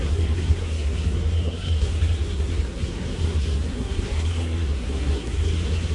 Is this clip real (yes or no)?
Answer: no